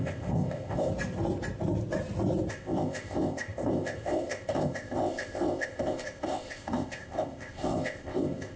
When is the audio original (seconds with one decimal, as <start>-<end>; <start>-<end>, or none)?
0.9-2.5